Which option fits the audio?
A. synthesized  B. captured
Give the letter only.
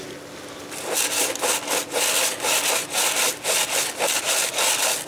B